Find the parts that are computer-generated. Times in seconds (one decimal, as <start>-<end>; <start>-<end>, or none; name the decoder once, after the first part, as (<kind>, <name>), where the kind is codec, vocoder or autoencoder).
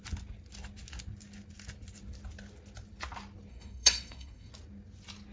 3.5-4.5 (codec, SNAC)